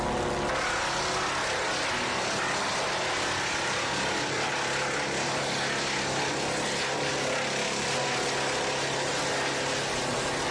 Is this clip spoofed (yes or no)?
no